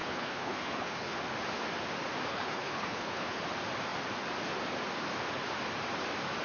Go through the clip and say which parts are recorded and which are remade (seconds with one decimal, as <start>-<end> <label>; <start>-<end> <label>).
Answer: 0.0-1.2 remade; 1.2-2.3 recorded; 2.3-3.4 remade; 3.4-6.4 recorded